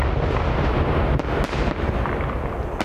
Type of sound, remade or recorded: recorded